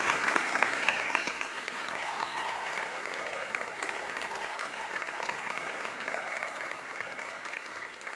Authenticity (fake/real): fake